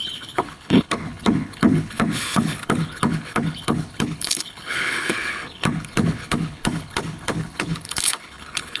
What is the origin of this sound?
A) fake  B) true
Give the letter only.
A